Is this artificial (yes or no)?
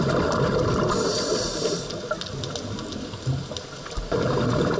no